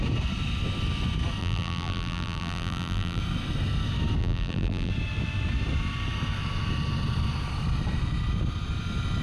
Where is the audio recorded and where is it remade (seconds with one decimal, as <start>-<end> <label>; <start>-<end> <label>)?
0.0-1.4 recorded; 1.4-3.2 remade; 3.2-4.2 recorded; 4.2-4.9 remade; 4.9-9.2 recorded